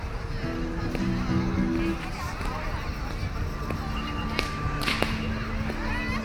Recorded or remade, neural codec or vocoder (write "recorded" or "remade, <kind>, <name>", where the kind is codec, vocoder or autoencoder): recorded